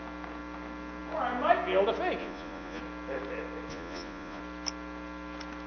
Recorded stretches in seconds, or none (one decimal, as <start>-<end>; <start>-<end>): 0.0-2.2; 2.8-3.7; 4.4-5.7